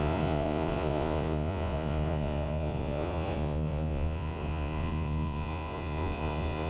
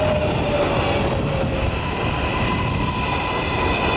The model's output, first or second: first